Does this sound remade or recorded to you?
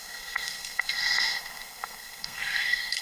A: remade